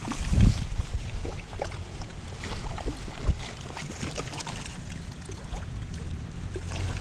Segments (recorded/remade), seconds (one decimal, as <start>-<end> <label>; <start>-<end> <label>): 0.0-1.2 recorded; 1.2-2.1 remade; 2.1-4.7 recorded; 4.7-6.1 remade; 6.1-7.0 recorded